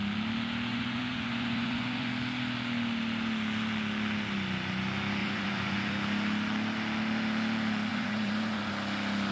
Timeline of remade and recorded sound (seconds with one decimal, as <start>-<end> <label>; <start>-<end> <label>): 0.0-0.7 recorded; 0.7-2.1 remade; 2.1-5.2 recorded; 5.2-5.9 remade; 5.9-7.9 recorded; 7.9-8.7 remade; 8.7-9.3 recorded